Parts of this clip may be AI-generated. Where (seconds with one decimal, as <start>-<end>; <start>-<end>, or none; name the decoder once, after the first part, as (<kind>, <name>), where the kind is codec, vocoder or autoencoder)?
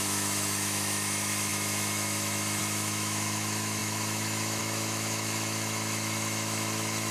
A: 0.0-7.1 (autoencoder, DAC-VAE)